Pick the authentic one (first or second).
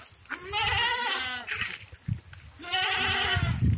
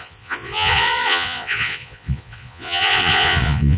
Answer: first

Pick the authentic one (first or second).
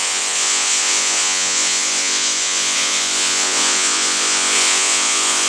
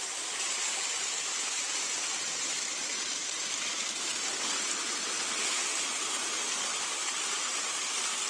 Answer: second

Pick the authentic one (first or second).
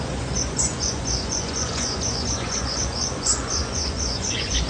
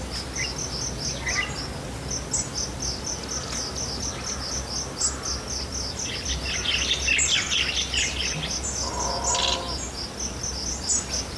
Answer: second